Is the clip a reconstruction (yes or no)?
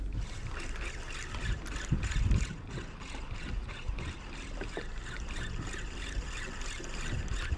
no